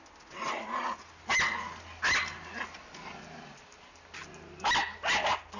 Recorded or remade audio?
recorded